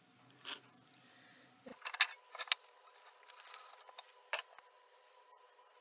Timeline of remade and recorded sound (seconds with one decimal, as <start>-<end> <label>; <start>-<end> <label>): 0.0-5.8 recorded